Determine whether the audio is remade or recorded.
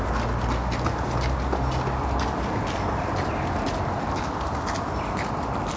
recorded